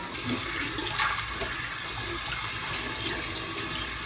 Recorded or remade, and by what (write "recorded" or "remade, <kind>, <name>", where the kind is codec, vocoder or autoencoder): recorded